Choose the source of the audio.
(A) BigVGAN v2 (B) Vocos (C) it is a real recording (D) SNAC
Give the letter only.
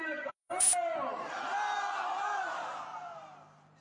A